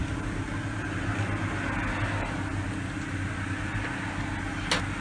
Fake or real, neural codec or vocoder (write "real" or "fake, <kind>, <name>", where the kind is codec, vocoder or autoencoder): real